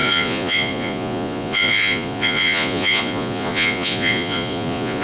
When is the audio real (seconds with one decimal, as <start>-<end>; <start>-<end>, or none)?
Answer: none